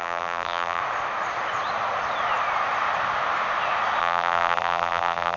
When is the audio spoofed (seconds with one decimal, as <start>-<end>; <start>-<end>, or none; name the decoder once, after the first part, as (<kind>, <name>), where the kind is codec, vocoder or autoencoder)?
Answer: 0.0-0.8 (vocoder, BigVGAN v2); 4.0-5.4